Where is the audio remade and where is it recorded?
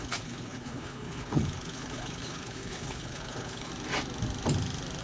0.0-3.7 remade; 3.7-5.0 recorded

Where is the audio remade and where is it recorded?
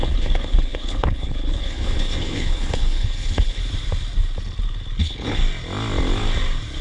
0.0-3.6 remade; 3.6-5.0 recorded; 5.0-5.4 remade; 5.4-6.8 recorded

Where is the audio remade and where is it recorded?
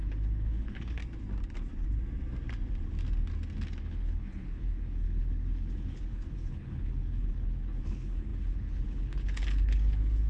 0.0-1.0 remade; 1.0-3.8 recorded; 3.8-10.3 remade